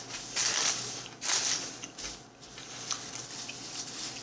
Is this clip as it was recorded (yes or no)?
yes